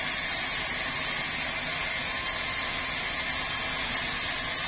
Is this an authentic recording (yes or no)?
yes